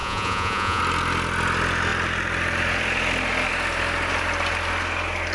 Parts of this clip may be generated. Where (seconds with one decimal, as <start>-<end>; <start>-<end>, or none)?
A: 0.0-0.8